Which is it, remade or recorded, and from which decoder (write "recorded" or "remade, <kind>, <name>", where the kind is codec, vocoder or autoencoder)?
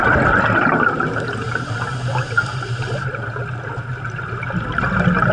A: recorded